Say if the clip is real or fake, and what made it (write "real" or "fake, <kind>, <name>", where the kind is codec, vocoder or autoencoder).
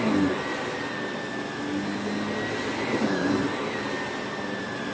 real